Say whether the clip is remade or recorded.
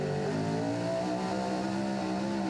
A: recorded